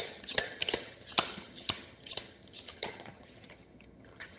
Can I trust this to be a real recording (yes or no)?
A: no